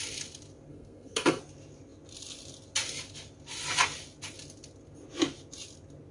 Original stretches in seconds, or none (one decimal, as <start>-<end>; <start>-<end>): 0.0-0.7; 1.4-6.1